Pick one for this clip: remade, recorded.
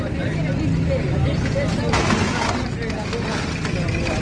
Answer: recorded